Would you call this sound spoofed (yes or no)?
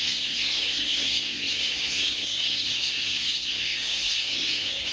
yes